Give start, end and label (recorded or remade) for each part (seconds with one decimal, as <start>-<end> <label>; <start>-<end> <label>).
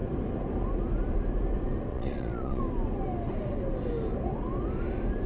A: 0.0-1.9 recorded; 1.9-2.6 remade; 2.6-5.3 recorded